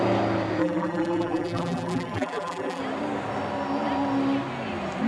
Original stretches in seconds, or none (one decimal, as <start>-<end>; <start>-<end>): 0.0-0.6; 2.8-5.1